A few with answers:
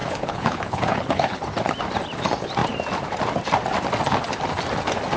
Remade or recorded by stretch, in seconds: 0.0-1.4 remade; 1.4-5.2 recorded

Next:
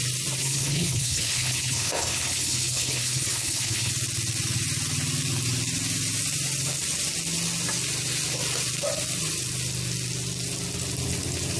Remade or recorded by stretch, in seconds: 0.0-0.4 recorded; 0.4-3.9 remade; 3.9-11.6 recorded